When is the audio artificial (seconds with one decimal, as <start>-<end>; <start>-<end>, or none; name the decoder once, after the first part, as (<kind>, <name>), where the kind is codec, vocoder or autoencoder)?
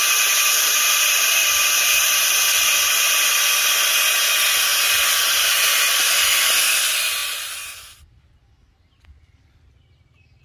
0.0-3.3 (vocoder, BigVGAN v2); 4.7-6.4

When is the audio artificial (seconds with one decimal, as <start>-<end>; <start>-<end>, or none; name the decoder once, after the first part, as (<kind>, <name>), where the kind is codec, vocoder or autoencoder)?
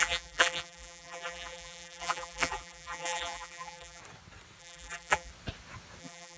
0.0-4.0 (vocoder, BigVGAN v2); 4.6-5.3; 6.0-6.4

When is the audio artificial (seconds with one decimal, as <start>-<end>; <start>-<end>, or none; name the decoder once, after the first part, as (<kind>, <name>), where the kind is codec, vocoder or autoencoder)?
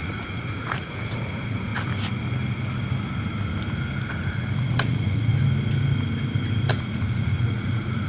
0.0-1.7 (vocoder, Vocos); 4.1-5.3; 6.7-8.1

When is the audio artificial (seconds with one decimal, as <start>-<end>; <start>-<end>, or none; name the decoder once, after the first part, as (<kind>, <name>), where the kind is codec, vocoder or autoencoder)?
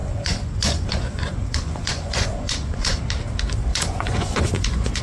0.0-3.0 (vocoder, Vocos); 3.7-5.0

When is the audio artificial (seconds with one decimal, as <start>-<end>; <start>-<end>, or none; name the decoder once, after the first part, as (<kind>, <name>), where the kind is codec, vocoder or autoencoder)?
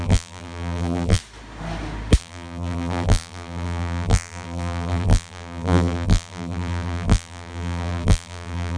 0.0-1.2 (vocoder, BigVGAN v2); 2.2-8.8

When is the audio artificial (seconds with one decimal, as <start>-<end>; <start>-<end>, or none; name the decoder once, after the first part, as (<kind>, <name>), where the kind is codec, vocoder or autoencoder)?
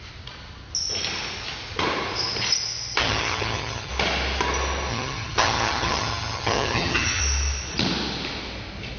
3.0-3.9 (vocoder, HiFi-GAN); 4.9-7.2